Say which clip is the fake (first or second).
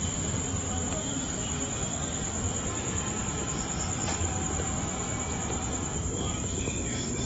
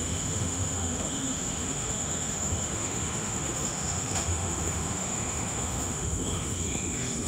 second